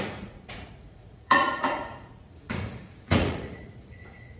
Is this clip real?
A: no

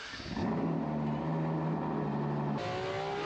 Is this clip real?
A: yes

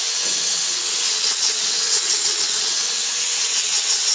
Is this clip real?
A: no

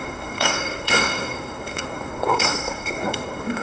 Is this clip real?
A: no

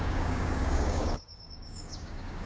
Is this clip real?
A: no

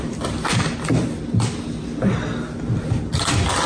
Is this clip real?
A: yes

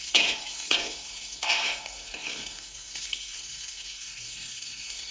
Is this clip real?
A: no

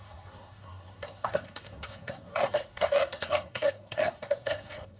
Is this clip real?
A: no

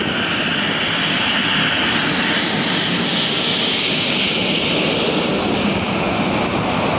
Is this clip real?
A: yes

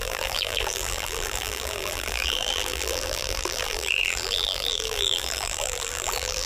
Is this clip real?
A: no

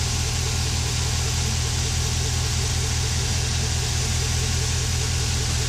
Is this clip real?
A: yes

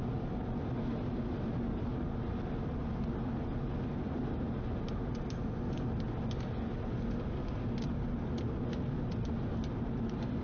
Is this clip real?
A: yes